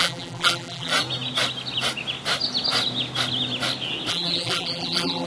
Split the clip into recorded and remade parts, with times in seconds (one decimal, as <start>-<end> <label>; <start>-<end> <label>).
0.0-0.9 remade; 0.9-4.1 recorded; 4.1-5.3 remade

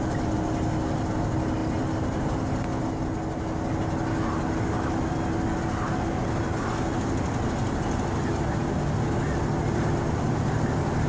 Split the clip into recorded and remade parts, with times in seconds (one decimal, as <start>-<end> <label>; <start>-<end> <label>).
0.0-11.1 recorded